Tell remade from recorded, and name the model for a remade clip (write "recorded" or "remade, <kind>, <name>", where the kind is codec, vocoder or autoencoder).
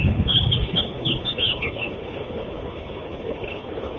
remade, codec, HILCodec